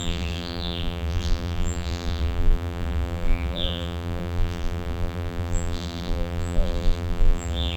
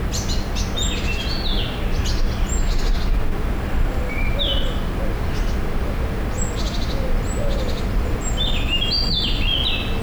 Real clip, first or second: second